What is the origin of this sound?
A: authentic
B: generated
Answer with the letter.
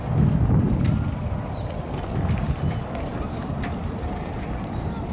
B